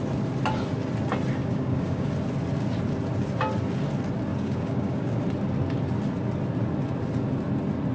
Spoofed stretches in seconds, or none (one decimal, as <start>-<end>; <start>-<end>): 1.4-2.1; 4.3-5.2